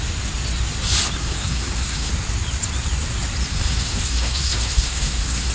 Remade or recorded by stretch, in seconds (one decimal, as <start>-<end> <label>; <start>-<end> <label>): 0.0-1.2 recorded; 1.2-2.1 remade; 2.1-3.5 recorded; 3.5-5.5 remade